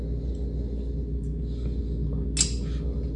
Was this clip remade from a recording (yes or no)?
no